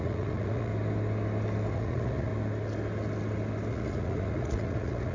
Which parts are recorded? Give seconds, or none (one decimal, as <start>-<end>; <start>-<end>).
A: 0.7-1.7; 2.3-3.7